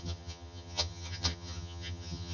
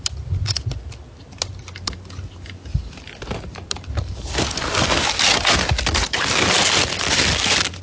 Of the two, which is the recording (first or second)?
second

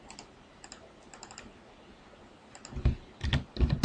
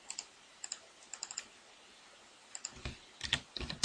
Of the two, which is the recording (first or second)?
first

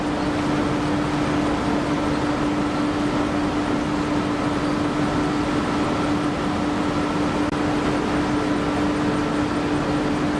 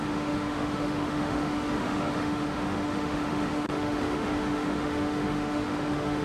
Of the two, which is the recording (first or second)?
first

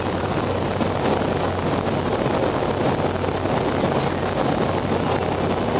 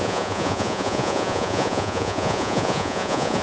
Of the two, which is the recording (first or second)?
first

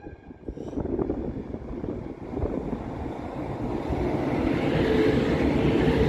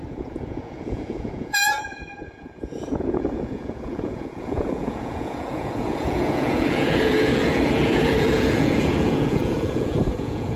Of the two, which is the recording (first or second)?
first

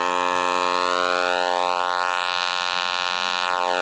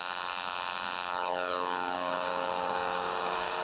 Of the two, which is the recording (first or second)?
first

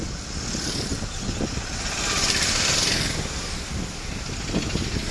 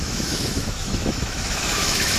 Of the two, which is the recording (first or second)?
first